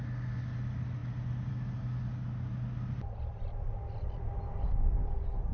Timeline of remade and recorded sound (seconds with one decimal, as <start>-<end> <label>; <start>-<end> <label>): 0.0-5.5 recorded